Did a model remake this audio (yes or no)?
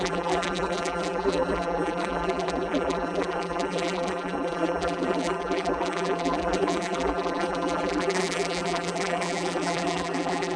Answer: yes